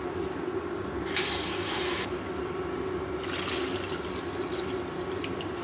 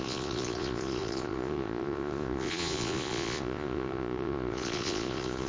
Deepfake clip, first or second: second